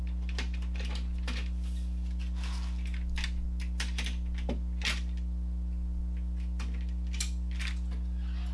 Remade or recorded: recorded